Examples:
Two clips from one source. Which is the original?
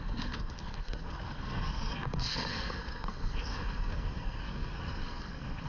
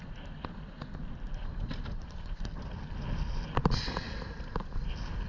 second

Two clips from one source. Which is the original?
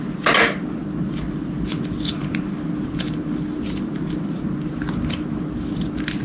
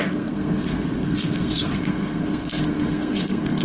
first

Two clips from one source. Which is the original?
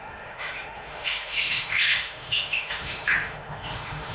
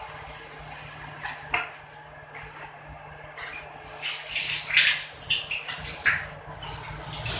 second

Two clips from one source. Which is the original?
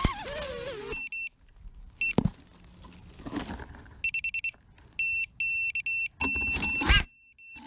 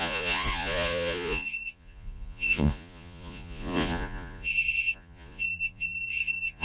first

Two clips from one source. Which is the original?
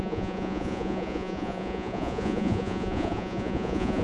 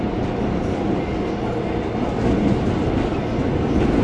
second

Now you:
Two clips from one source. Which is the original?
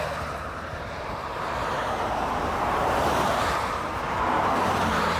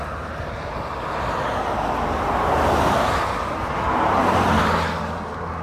second